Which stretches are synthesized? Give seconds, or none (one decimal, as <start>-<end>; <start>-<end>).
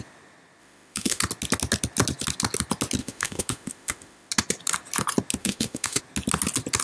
0.6-1.2; 3.0-4.3; 5.4-6.0